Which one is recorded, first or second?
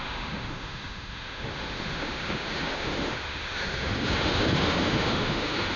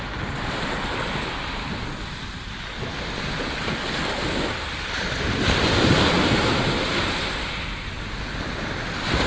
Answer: second